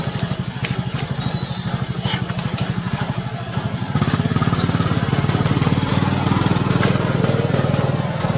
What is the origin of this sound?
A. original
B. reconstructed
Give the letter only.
A